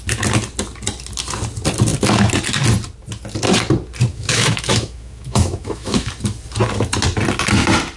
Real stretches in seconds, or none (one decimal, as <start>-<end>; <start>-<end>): 0.0-4.1; 6.1-8.0